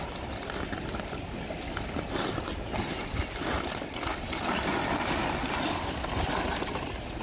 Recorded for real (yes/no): yes